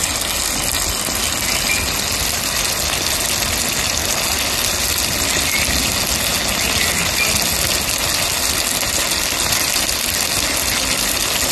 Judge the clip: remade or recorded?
recorded